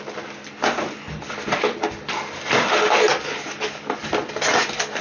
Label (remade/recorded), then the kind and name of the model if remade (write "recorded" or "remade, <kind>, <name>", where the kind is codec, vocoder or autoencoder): recorded